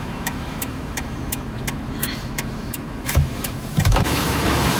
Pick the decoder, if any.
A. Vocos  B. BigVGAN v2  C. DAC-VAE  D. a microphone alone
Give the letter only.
C